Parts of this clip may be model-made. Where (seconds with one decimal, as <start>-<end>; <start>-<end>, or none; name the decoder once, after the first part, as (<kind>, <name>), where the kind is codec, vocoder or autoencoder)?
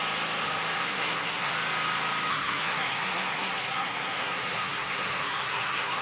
0.8-1.5 (codec, SNAC); 2.3-6.0